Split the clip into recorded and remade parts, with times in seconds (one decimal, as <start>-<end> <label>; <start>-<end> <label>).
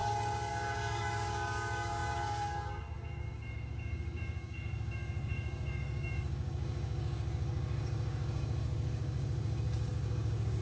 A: 0.0-10.6 remade